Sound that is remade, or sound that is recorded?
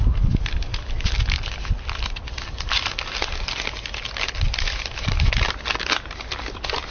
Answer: recorded